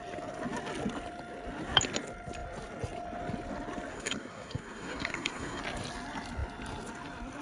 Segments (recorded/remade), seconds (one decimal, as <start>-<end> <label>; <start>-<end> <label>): 0.0-3.9 recorded; 3.9-5.6 remade; 5.6-7.4 recorded